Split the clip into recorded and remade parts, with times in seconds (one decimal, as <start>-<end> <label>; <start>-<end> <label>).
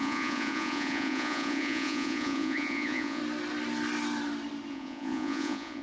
0.0-3.2 remade; 3.2-4.7 recorded; 4.7-5.8 remade